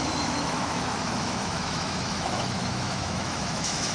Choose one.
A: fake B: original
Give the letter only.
A